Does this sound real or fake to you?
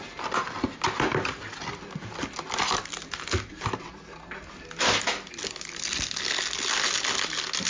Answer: real